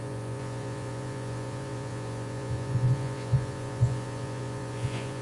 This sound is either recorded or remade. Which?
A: remade